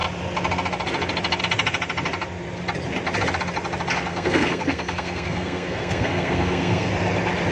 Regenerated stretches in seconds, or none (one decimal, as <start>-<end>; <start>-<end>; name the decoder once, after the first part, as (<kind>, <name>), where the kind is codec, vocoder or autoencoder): 4.1-6.9 (codec, SNAC)